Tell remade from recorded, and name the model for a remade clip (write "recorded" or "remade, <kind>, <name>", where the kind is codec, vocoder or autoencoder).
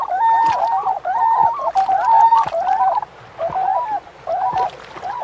recorded